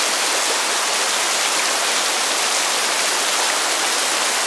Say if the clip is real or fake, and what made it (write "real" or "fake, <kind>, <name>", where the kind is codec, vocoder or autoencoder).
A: real